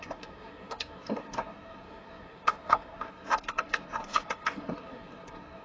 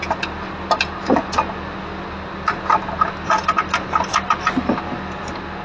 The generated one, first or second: first